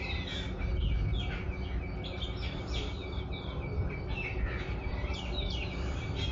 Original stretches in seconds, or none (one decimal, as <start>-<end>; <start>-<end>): 0.0-6.3